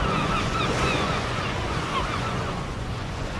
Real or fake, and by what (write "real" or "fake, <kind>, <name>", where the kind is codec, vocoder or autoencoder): fake, vocoder, Vocos